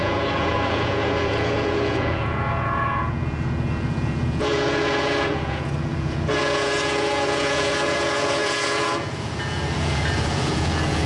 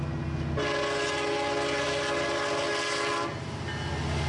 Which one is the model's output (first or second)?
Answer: first